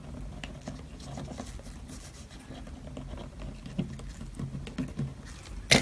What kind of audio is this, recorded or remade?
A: recorded